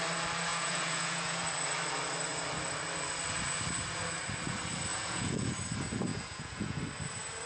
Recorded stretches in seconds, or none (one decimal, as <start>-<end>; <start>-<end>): 0.0-0.5; 1.4-4.9; 5.5-6.1; 6.8-7.5